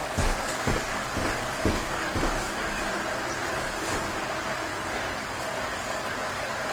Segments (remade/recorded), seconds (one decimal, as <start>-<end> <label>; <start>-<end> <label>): 0.0-2.8 remade; 2.8-3.4 recorded; 3.4-4.1 remade; 4.1-4.7 recorded; 4.7-6.7 remade